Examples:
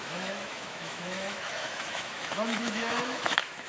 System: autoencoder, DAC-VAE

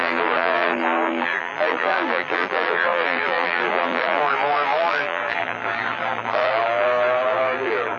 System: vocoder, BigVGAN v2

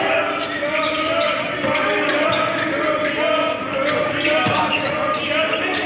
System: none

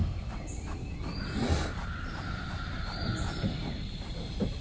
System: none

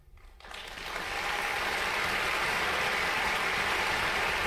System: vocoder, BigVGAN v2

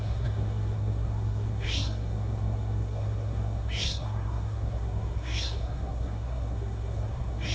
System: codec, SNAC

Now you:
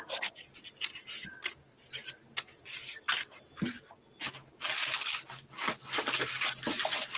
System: none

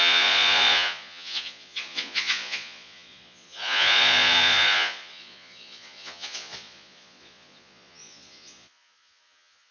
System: vocoder, Vocos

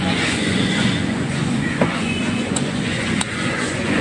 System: vocoder, Vocos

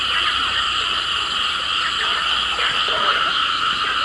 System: none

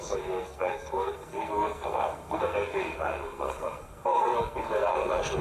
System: codec, SNAC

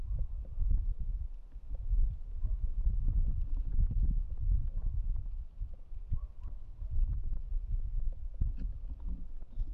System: none